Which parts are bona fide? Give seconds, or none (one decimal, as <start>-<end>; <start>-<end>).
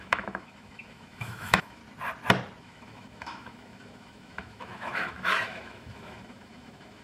1.8-2.6